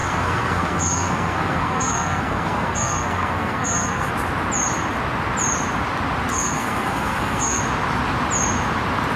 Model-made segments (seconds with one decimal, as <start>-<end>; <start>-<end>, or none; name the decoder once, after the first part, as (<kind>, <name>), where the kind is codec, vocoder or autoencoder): 0.0-4.1 (codec, SNAC); 6.3-7.6